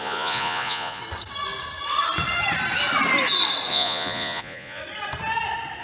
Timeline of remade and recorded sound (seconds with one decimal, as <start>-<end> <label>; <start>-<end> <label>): 0.0-1.0 remade; 1.0-3.7 recorded; 3.7-4.8 remade; 4.8-5.8 recorded